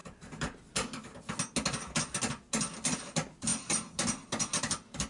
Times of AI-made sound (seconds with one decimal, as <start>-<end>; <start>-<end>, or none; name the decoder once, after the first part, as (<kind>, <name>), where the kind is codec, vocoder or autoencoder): none